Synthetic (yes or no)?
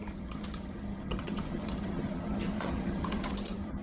yes